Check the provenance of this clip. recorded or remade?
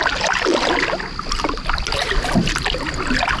recorded